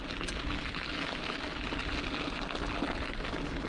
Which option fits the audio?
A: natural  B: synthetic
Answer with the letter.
A